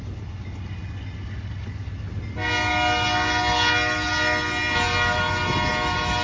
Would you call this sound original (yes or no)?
yes